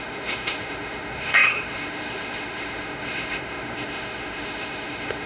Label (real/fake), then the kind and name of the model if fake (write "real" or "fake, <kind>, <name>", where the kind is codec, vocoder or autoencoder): fake, autoencoder, DAC-VAE